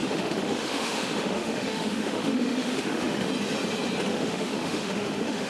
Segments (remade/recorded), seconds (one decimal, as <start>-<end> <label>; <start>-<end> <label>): 0.0-3.3 remade; 3.3-4.1 recorded; 4.1-5.5 remade